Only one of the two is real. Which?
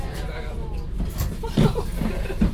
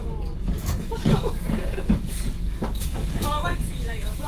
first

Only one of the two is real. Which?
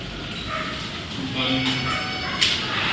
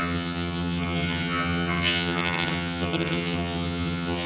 first